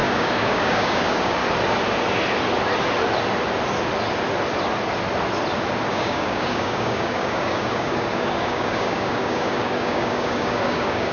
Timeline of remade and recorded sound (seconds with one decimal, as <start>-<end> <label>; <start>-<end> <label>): 0.0-1.4 remade; 1.4-5.9 recorded; 5.9-11.1 remade